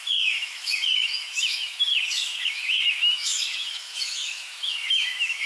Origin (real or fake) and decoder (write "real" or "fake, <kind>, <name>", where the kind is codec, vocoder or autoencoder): fake, autoencoder, DAC-VAE